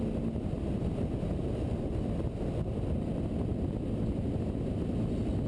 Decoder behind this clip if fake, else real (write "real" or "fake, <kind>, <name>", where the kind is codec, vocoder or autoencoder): real